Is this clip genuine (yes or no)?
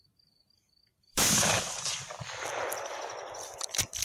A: no